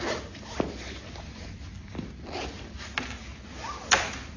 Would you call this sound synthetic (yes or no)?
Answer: no